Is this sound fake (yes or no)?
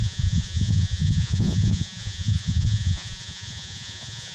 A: yes